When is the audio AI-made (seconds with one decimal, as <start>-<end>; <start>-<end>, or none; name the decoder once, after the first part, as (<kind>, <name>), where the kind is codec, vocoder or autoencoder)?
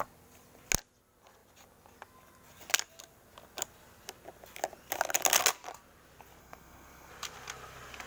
6.4-7.1 (codec, SNAC)